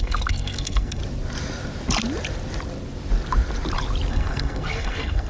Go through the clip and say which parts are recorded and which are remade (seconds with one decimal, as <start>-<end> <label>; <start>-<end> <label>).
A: 0.0-1.0 remade; 1.0-4.1 recorded; 4.1-5.3 remade